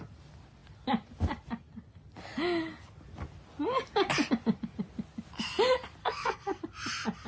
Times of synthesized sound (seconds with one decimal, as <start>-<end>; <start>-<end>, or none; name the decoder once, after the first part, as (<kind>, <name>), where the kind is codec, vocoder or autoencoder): 6.0-6.6 (codec, SNAC)